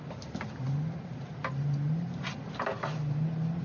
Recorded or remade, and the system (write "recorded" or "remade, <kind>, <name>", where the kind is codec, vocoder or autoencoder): recorded